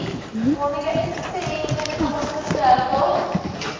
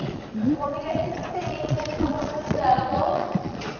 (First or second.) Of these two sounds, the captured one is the first